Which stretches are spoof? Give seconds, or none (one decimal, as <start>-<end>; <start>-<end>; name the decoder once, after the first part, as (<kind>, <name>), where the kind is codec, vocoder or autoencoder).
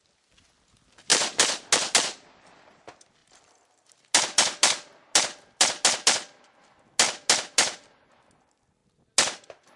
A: 1.1-1.7 (vocoder, BigVGAN v2)